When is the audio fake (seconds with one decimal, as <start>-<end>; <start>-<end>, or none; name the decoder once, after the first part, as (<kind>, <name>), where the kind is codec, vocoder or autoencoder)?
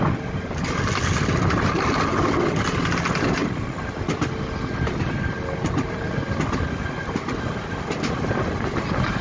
none